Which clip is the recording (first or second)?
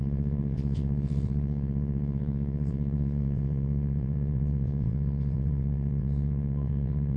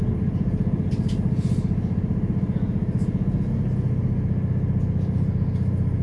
second